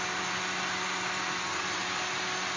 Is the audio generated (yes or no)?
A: no